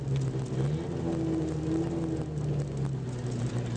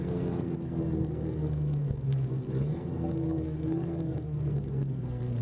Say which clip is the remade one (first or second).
second